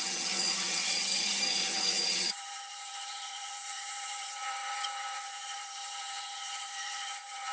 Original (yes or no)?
no